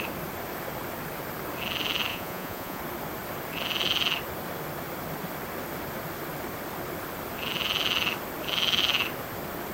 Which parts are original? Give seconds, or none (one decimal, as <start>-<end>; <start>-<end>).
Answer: 0.0-2.1; 2.8-9.7